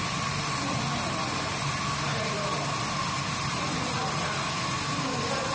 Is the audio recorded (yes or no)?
yes